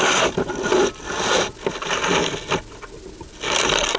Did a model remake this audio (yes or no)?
no